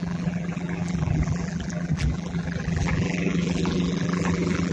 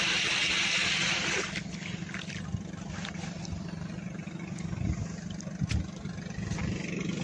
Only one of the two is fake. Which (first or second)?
first